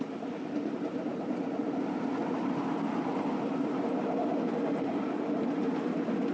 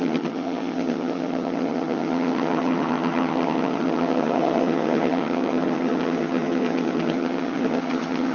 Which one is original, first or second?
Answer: first